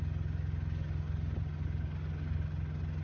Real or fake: real